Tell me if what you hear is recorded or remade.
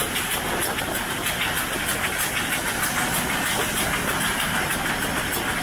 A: recorded